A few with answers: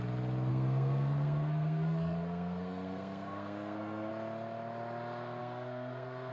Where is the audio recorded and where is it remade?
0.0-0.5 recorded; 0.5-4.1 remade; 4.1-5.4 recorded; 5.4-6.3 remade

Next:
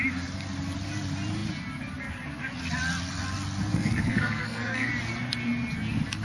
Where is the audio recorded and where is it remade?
0.0-3.7 recorded; 3.7-4.9 remade; 4.9-6.2 recorded

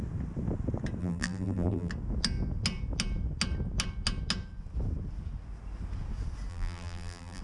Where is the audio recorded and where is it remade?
0.0-1.0 recorded; 1.0-1.9 remade; 1.9-6.5 recorded; 6.5-7.4 remade

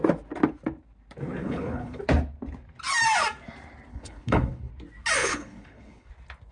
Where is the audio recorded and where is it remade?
0.0-1.4 recorded; 1.4-2.0 remade; 2.0-3.9 recorded; 3.9-4.7 remade; 4.7-5.2 recorded; 5.2-6.1 remade; 6.1-6.5 recorded

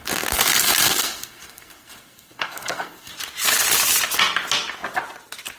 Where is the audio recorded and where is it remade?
0.0-3.1 remade; 3.1-5.6 recorded

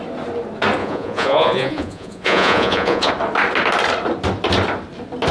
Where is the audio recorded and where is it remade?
0.0-0.8 recorded; 0.8-3.1 remade; 3.1-5.3 recorded

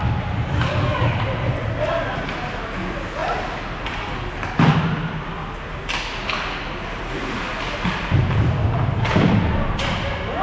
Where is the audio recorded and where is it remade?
0.0-10.4 recorded

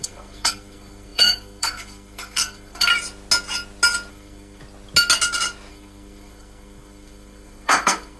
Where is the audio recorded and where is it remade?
0.0-2.9 remade; 2.9-4.1 recorded; 4.1-4.6 remade; 4.6-5.7 recorded; 5.7-8.2 remade